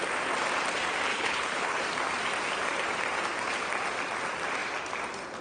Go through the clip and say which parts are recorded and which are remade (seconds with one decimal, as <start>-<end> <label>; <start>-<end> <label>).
0.0-1.1 recorded; 1.1-1.8 remade; 1.8-5.4 recorded